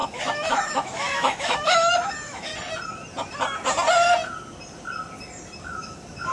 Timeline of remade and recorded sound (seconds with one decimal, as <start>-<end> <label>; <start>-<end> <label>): 0.0-2.5 remade; 2.5-5.6 recorded; 5.6-6.3 remade